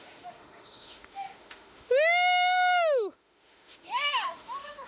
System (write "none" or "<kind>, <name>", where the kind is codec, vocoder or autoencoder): autoencoder, DAC-VAE